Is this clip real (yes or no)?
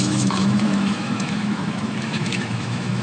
no